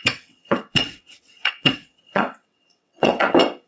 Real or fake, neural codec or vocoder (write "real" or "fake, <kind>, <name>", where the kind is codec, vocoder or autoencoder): fake, vocoder, WaveNeXt